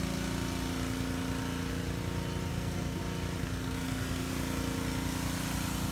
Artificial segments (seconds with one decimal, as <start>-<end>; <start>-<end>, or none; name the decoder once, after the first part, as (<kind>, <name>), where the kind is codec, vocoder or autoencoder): 2.5-3.0 (codec, SNAC); 3.4-4.3